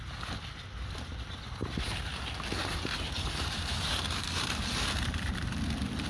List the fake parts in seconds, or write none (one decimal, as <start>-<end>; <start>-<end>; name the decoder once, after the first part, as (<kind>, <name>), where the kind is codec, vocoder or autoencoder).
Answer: 1.6-2.2 (vocoder, BigVGAN v2); 2.6-5.3